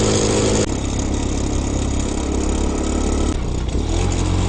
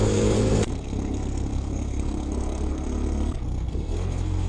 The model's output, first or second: second